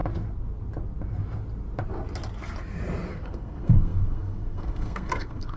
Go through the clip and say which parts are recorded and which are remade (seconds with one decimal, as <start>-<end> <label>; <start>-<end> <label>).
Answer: 0.0-3.1 recorded; 3.1-5.6 remade